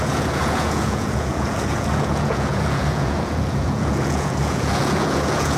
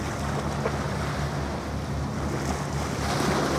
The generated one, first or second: first